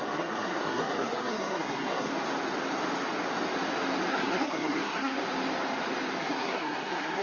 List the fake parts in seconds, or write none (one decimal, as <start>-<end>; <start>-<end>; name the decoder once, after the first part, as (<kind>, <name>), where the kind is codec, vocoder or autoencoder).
0.0-2.1 (codec, SNAC); 4.1-5.2; 6.2-7.2